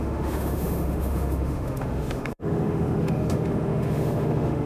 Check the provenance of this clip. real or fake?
fake